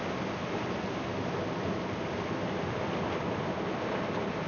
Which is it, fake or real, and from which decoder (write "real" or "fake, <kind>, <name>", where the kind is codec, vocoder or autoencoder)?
real